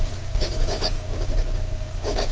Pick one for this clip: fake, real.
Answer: fake